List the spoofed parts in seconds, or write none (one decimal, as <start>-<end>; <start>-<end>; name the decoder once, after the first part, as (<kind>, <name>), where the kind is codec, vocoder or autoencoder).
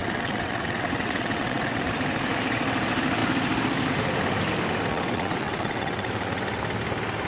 0.0-1.9 (vocoder, WaveNeXt); 4.9-6.4